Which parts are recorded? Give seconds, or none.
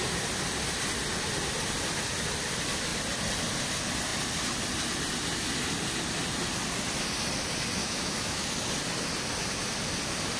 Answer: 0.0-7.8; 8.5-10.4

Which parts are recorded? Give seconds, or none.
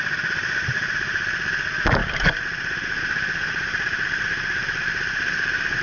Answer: none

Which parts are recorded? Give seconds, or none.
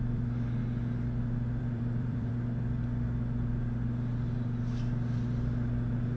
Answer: 0.6-1.6; 2.3-6.2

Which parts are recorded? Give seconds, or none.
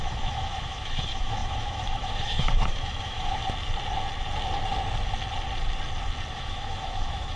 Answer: 3.4-6.3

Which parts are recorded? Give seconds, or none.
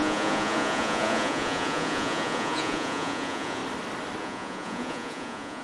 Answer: 3.6-4.2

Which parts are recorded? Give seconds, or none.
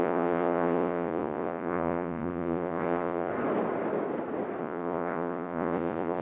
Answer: 3.3-4.6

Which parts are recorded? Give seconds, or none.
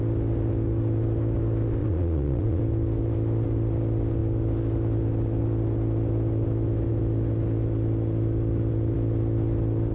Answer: 0.0-1.8; 2.6-9.9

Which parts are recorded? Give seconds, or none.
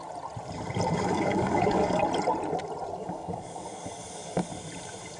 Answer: 0.0-0.9; 2.0-3.0; 4.5-5.2